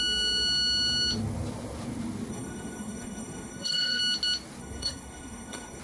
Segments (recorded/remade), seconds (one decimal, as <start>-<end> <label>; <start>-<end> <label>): 0.0-2.3 recorded; 2.3-4.0 remade; 4.0-4.6 recorded; 4.6-5.8 remade